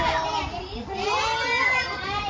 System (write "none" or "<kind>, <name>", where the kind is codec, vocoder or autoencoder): none